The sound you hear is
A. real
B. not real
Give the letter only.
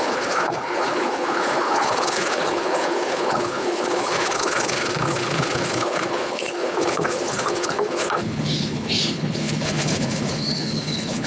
B